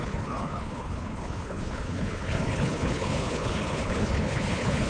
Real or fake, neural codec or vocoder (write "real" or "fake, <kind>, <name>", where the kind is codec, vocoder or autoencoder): fake, codec, HILCodec